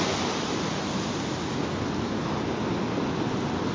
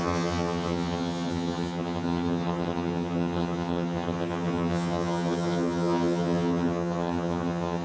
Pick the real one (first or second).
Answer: first